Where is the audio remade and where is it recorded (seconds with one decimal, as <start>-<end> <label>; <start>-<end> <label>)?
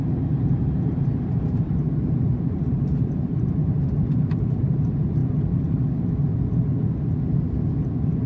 0.0-5.2 remade; 5.2-7.8 recorded; 7.8-8.3 remade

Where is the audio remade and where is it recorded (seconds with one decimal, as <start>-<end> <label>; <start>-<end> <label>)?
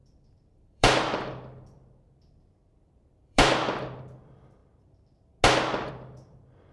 0.0-4.0 remade; 4.0-6.7 recorded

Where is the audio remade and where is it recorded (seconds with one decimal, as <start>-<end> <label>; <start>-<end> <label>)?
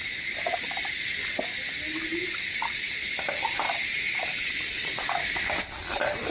0.0-6.3 recorded